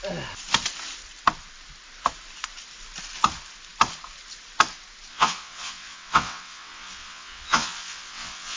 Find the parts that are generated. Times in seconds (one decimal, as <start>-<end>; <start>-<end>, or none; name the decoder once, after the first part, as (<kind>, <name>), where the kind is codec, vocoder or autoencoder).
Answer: 5.1-8.6 (vocoder, WaveNeXt)